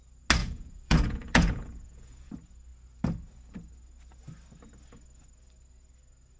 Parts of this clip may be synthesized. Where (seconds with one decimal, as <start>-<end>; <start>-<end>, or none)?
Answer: 0.4-2.3